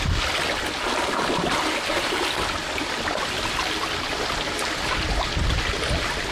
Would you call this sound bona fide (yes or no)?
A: yes